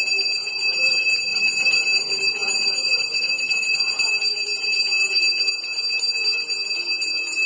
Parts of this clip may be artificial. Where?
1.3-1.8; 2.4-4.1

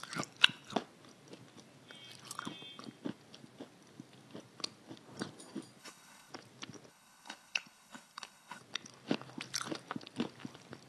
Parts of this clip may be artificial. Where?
5.8-6.3; 6.9-8.6